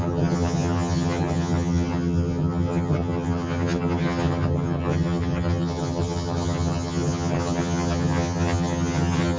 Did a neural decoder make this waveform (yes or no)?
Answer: yes